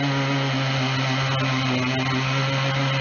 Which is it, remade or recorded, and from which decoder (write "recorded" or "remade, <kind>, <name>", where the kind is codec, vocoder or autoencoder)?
recorded